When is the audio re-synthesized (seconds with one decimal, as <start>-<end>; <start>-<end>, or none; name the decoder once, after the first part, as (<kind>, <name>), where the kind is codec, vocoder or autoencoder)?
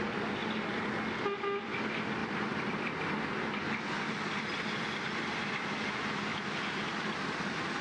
none